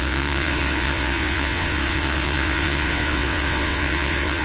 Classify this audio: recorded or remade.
remade